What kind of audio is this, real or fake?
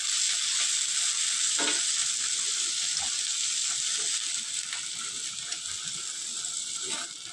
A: real